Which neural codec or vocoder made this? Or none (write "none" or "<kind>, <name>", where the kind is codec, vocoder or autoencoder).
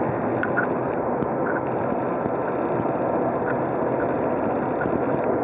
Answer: none